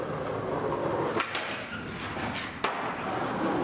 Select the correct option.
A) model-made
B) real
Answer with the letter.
B